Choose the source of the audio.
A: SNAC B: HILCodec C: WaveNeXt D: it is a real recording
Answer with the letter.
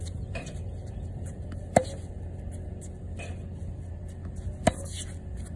D